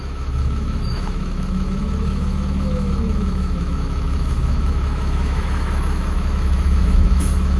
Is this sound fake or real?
fake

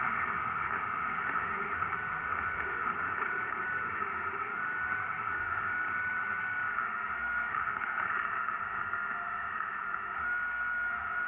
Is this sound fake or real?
fake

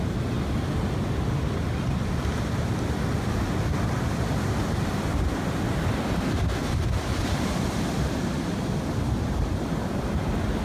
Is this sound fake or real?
real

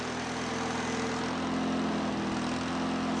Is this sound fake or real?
real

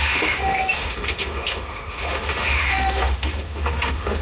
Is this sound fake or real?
fake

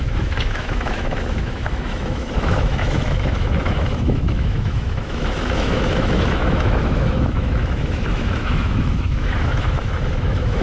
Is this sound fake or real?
fake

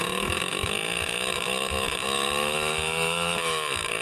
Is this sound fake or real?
fake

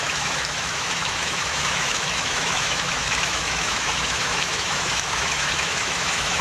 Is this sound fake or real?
fake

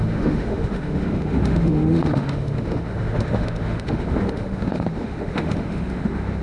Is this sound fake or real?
fake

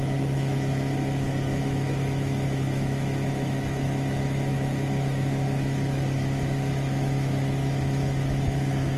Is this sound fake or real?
fake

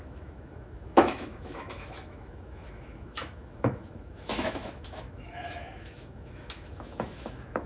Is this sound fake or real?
fake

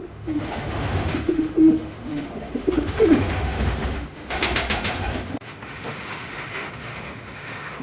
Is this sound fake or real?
fake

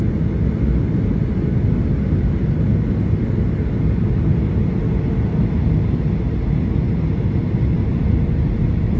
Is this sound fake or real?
real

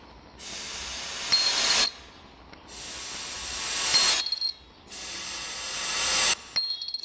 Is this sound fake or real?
real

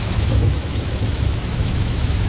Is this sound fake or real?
fake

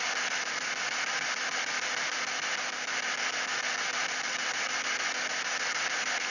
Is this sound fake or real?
real